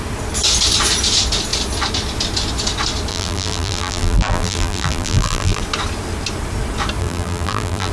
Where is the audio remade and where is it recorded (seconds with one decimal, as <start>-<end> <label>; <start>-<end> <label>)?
0.0-3.1 recorded; 3.1-5.6 remade; 5.6-7.0 recorded; 7.0-7.9 remade